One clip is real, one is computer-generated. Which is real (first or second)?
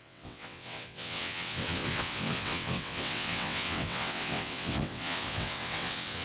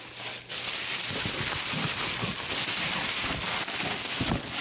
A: second